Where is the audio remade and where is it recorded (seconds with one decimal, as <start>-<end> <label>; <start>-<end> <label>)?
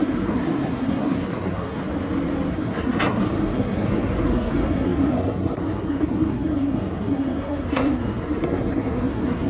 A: 0.0-1.8 remade; 1.8-2.5 recorded; 2.5-9.5 remade